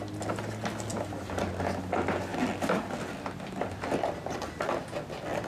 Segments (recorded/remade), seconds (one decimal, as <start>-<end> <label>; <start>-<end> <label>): 0.0-0.9 recorded; 0.9-1.5 remade; 1.5-2.3 recorded; 2.3-4.1 remade; 4.1-5.5 recorded

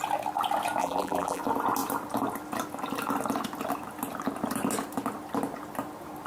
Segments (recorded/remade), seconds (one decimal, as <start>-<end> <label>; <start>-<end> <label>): 0.0-0.8 recorded; 0.8-1.4 remade; 1.4-6.3 recorded

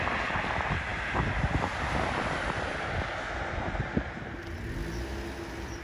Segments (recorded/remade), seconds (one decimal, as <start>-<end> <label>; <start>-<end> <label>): 0.0-5.8 recorded

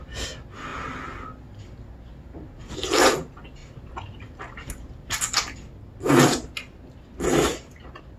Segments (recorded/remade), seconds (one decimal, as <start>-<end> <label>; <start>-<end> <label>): 0.0-3.6 recorded; 3.6-5.1 remade; 5.1-7.5 recorded; 7.5-8.2 remade

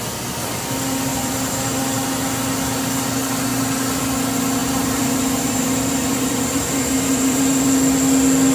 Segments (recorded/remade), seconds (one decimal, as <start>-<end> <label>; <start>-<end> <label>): 0.0-1.1 recorded; 1.1-1.8 remade; 1.8-4.6 recorded; 4.6-7.7 remade; 7.7-8.5 recorded

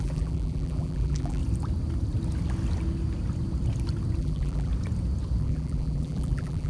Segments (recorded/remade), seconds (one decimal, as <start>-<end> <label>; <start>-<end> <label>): 0.0-1.4 remade; 1.4-4.2 recorded; 4.2-4.7 remade; 4.7-5.4 recorded; 5.4-6.7 remade

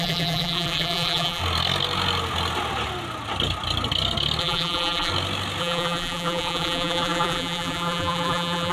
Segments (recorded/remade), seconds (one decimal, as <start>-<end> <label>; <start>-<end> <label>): 0.0-1.4 remade; 1.4-4.4 recorded; 4.4-5.1 remade; 5.1-5.6 recorded; 5.6-8.7 remade

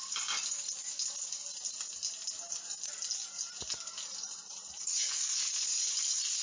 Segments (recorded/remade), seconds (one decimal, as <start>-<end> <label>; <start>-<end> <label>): 0.0-1.4 remade; 1.4-5.2 recorded; 5.2-6.4 remade